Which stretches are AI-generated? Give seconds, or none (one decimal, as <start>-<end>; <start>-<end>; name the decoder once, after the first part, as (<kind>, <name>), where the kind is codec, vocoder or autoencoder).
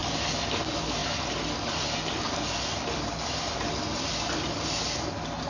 none